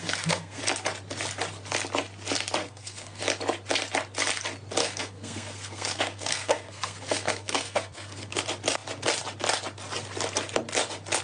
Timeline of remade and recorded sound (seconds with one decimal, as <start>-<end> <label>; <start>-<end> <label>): 0.0-0.6 remade; 0.6-2.6 recorded; 2.6-3.2 remade; 3.2-4.8 recorded; 4.8-8.4 remade; 8.4-11.2 recorded